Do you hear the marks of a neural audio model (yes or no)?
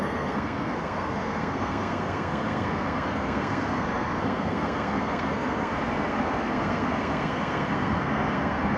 yes